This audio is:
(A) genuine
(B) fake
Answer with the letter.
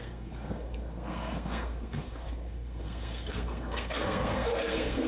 B